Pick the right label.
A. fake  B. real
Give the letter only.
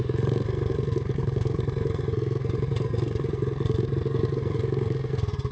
A